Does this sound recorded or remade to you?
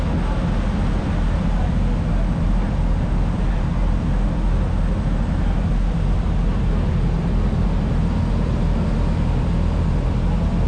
recorded